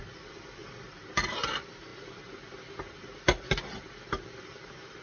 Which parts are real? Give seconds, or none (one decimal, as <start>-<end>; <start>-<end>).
0.0-5.0

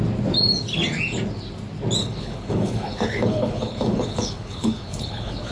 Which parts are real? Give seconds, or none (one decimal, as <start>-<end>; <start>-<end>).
0.0-2.0